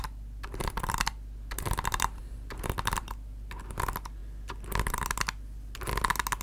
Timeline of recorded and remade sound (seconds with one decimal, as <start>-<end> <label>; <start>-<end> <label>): 0.0-6.4 recorded